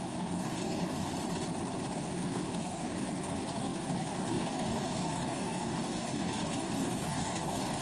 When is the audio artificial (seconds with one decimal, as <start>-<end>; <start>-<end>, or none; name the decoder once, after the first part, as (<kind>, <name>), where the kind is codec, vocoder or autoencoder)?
0.0-1.1 (codec, DAC); 1.9-7.8